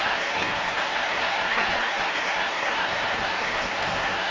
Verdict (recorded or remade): remade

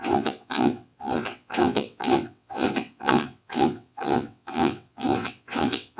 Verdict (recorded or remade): remade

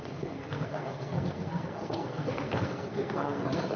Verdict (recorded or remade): remade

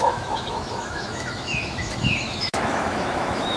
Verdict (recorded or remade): remade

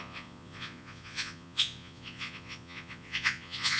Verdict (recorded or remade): remade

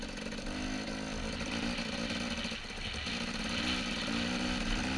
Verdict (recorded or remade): recorded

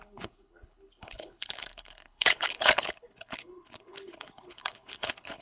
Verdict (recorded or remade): remade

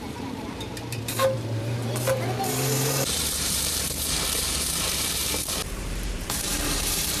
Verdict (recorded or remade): remade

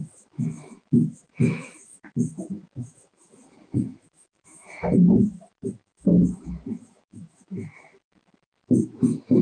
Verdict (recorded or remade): remade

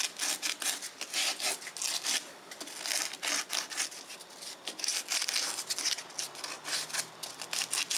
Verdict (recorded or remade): recorded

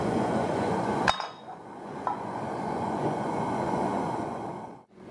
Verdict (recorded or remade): remade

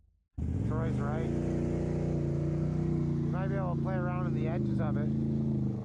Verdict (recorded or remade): recorded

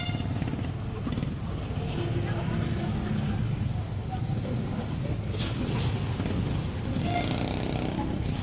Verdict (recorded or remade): recorded